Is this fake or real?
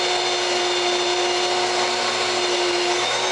fake